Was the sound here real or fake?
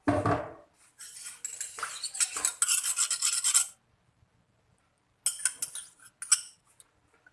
real